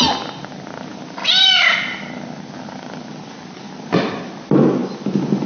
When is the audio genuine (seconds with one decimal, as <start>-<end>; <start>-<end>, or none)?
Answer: 0.0-5.5